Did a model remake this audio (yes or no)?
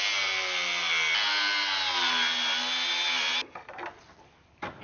no